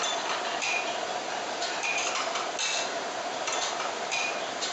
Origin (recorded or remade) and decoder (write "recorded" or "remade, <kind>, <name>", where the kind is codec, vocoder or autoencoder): recorded